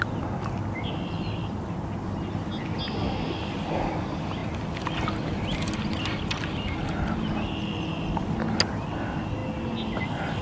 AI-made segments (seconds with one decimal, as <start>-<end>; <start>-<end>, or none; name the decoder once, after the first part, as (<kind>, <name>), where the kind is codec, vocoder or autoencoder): none